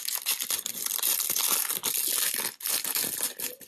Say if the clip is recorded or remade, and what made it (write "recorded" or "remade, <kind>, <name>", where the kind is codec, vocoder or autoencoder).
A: recorded